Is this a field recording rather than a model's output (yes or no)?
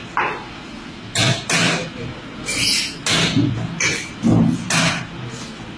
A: yes